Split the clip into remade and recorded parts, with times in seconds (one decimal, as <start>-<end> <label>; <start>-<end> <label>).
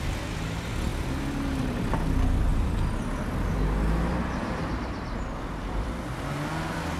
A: 0.0-2.5 recorded; 2.5-6.0 remade; 6.0-7.0 recorded